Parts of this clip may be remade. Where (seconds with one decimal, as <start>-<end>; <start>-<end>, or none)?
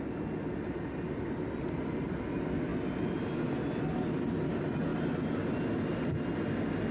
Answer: none